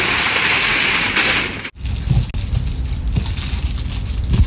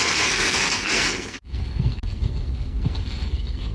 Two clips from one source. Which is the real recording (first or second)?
first